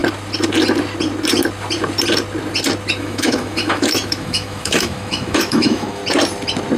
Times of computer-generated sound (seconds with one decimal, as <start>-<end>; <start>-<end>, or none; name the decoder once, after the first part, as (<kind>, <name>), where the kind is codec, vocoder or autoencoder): 3.0-6.0 (autoencoder, DAC-VAE)